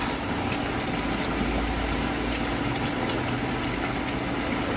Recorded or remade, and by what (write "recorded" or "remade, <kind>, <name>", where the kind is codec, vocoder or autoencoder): recorded